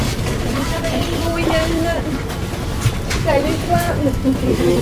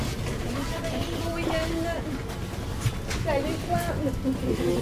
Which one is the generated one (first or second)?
first